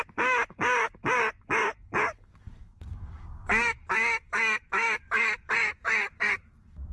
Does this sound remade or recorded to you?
remade